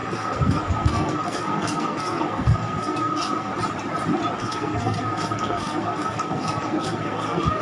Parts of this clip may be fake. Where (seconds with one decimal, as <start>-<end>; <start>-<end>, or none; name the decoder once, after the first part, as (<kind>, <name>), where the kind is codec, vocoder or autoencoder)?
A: 0.0-3.5 (codec, SNAC); 4.4-7.6